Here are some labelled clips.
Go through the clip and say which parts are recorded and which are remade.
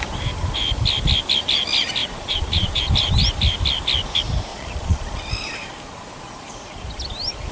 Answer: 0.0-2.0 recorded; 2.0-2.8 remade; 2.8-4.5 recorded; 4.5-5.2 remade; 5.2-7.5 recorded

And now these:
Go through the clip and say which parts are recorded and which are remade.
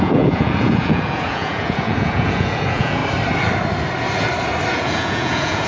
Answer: 0.0-3.0 remade; 3.0-4.7 recorded; 4.7-5.7 remade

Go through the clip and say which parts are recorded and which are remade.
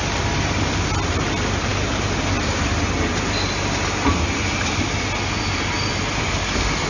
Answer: 0.0-6.9 recorded